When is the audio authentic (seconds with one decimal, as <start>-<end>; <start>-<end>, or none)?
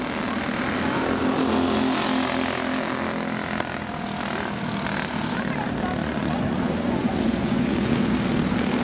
0.0-6.0; 8.1-8.8